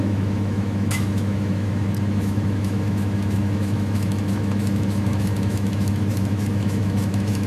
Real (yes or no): no